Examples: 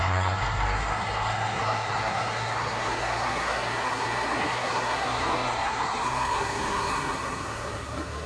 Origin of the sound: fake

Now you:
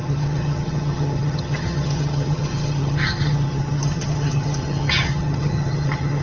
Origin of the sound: fake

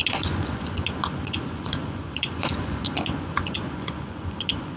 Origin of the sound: fake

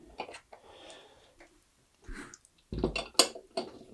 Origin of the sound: real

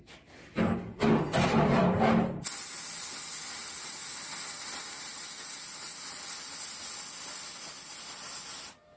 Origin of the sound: real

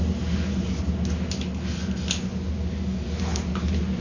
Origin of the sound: real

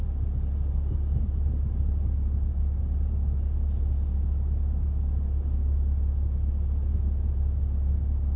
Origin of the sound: real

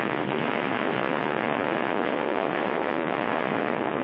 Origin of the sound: fake